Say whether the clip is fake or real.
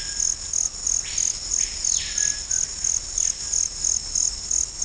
real